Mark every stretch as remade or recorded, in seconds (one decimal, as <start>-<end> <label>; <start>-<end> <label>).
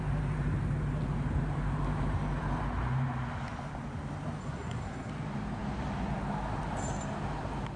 0.0-4.4 recorded; 4.4-5.1 remade; 5.1-7.8 recorded